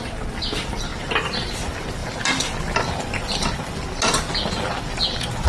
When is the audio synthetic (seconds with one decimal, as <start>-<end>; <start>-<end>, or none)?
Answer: none